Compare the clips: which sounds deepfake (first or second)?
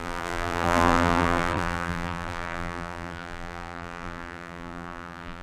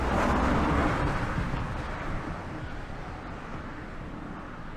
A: first